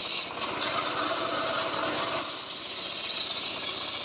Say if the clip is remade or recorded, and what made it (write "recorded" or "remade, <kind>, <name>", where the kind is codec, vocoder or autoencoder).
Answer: recorded